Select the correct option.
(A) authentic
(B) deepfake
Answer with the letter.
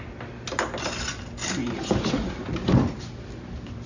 A